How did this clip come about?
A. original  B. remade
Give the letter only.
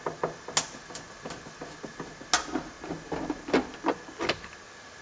A